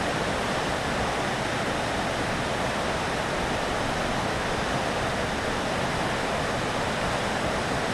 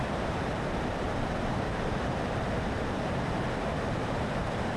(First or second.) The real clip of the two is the first